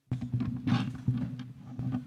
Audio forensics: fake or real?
real